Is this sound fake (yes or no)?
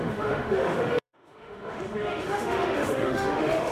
yes